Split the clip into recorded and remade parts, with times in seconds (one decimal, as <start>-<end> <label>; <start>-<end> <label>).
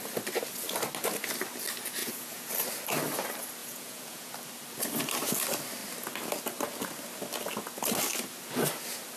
0.0-2.0 recorded; 2.0-2.5 remade; 2.5-3.6 recorded; 3.6-4.3 remade; 4.3-9.2 recorded